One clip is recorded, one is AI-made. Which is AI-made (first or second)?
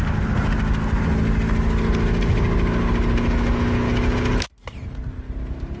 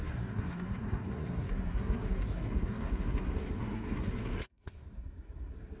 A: second